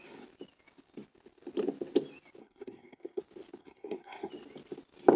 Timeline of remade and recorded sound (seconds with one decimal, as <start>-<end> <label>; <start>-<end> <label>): 0.0-2.4 recorded; 2.4-3.2 remade; 3.2-3.6 recorded; 3.6-4.3 remade; 4.3-5.2 recorded

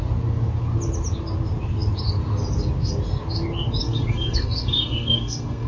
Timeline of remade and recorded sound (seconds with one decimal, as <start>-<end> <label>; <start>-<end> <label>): 0.0-3.8 recorded; 3.8-5.7 remade

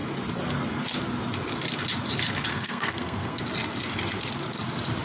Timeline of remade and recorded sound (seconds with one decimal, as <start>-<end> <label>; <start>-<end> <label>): 0.0-2.5 recorded; 2.5-3.4 remade; 3.4-5.0 recorded

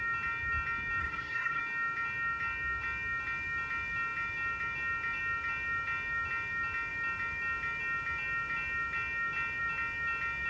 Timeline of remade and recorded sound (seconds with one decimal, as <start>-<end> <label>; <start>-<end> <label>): 0.0-1.0 recorded; 1.0-1.6 remade; 1.6-10.5 recorded

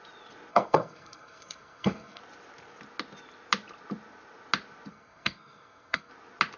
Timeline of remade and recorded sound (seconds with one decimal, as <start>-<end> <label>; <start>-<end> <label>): 0.0-0.5 recorded; 0.5-2.2 remade; 2.2-4.9 recorded; 4.9-6.1 remade; 6.1-6.6 recorded

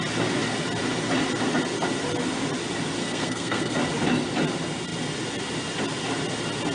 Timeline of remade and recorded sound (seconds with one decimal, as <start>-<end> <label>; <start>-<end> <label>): 0.0-3.0 recorded; 3.0-3.8 remade; 3.8-6.7 recorded

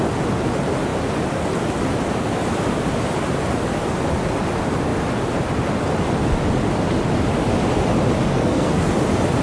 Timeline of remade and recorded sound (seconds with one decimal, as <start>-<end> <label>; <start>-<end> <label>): 0.0-8.3 recorded; 8.3-8.8 remade; 8.8-9.4 recorded